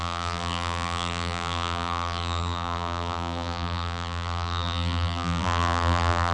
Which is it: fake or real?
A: fake